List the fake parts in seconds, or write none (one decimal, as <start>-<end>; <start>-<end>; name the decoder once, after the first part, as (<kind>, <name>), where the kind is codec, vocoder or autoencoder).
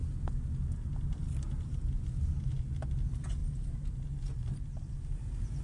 none